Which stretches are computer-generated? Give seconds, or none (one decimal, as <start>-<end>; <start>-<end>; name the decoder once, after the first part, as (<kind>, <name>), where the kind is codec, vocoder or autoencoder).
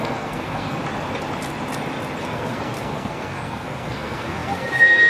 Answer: 0.0-0.8 (codec, SNAC); 2.2-5.1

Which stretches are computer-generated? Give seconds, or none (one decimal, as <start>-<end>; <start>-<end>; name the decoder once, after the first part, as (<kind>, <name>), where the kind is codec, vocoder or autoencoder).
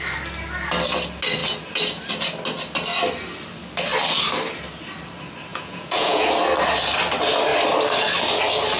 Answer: 5.5-6.3 (vocoder, Vocos)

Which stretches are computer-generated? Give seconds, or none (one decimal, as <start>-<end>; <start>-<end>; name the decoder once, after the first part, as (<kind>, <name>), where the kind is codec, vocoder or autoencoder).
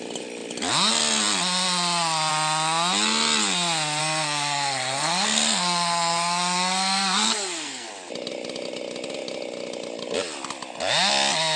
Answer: 4.0-7.9 (codec, SNAC)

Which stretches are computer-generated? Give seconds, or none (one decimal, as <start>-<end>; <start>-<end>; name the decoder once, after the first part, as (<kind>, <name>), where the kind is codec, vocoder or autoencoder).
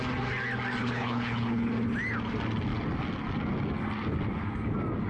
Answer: 0.8-1.7 (codec, HILCodec)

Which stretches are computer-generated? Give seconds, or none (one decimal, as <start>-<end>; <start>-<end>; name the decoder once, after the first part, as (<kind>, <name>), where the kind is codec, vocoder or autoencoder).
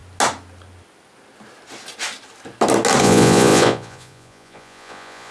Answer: 3.0-5.3 (vocoder, Vocos)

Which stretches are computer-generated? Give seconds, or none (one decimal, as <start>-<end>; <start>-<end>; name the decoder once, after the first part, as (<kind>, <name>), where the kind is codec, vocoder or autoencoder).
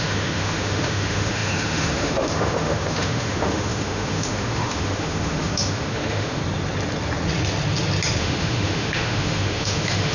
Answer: 0.0-6.4 (autoencoder, DAC-VAE); 8.2-10.1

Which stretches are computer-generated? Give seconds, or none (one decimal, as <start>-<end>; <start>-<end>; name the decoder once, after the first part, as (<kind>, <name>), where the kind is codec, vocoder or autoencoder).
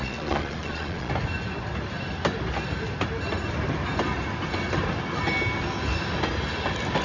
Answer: 0.0-1.1 (vocoder, Vocos)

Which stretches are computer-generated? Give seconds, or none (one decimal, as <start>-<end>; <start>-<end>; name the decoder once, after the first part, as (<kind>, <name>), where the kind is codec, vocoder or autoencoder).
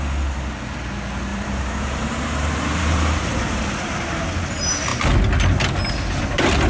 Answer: 1.3-4.1 (vocoder, BigVGAN v2)